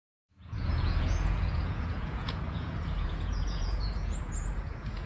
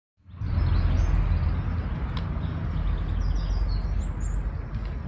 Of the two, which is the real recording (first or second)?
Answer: second